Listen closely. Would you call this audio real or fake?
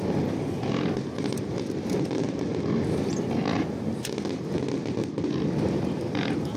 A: real